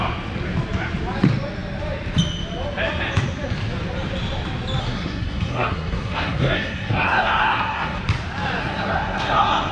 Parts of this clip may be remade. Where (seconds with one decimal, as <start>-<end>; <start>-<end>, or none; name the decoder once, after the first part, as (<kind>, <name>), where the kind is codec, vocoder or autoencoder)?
4.8-8.0 (codec, SNAC); 8.6-9.7